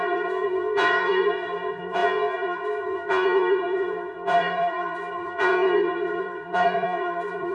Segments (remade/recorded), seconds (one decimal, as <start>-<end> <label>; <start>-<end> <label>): 0.0-7.5 remade